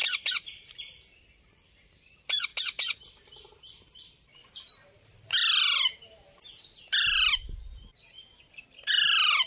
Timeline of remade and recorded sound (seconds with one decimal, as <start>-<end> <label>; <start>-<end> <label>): 0.0-9.5 remade